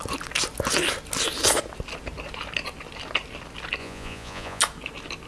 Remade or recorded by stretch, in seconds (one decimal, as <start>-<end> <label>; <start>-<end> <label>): 0.0-3.8 recorded; 3.8-4.6 remade; 4.6-5.3 recorded